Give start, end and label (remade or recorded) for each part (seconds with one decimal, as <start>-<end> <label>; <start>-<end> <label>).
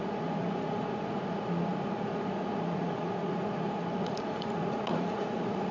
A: 0.0-5.7 remade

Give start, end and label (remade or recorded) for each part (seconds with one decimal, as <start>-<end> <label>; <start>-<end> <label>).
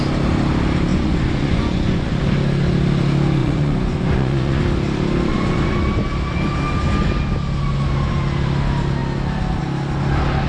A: 0.0-0.9 recorded; 0.9-2.1 remade; 2.1-3.4 recorded; 3.4-4.6 remade; 4.6-5.3 recorded; 5.3-5.8 remade; 5.8-10.5 recorded